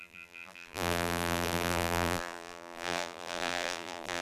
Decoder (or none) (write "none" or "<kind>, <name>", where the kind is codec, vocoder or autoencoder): vocoder, BigVGAN v2